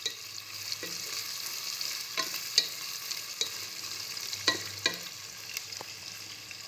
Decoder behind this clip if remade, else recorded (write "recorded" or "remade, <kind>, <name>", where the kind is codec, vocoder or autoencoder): recorded